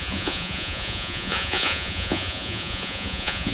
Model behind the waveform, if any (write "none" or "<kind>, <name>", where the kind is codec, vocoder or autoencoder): vocoder, Vocos